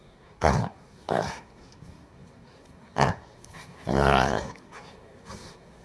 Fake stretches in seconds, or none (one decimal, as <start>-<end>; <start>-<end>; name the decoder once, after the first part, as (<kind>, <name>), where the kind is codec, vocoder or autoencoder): 0.0-5.8 (codec, SNAC)